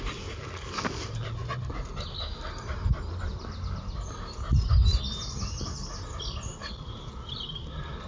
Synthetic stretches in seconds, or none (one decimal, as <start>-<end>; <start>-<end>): none